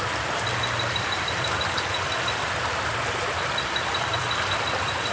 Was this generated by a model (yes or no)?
yes